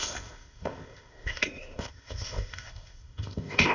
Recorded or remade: remade